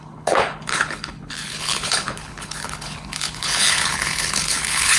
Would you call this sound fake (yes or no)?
yes